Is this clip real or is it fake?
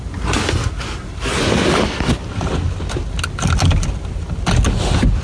real